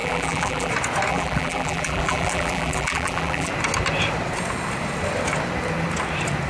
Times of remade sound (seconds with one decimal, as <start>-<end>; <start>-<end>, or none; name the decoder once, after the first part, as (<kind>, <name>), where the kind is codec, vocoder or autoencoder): 0.0-0.7 (vocoder, BigVGAN v2); 1.1-3.5